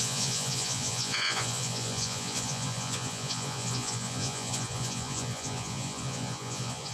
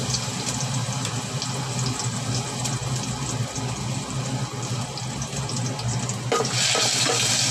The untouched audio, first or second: second